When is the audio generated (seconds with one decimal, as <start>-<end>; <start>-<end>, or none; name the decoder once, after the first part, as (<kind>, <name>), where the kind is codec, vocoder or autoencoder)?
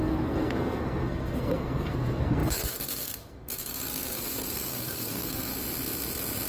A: 0.0-5.5 (codec, SNAC)